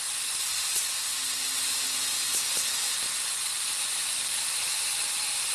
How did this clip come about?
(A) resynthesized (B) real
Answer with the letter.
B